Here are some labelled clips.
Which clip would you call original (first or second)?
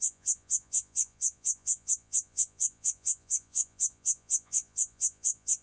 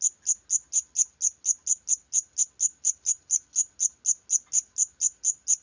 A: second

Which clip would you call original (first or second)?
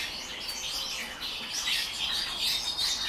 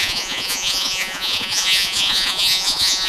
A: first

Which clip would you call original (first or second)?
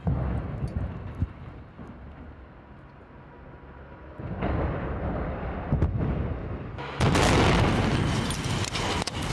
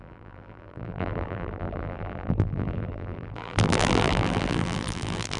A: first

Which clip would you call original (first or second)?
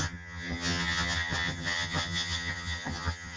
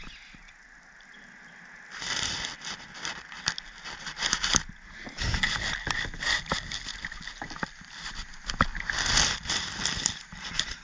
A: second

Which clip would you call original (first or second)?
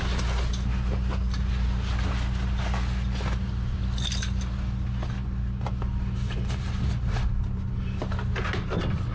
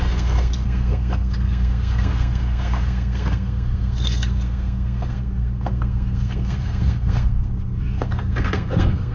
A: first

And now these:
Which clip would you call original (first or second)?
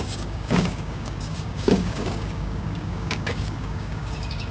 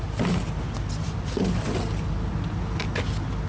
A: second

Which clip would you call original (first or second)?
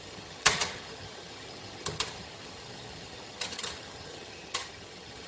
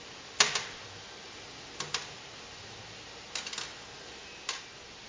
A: second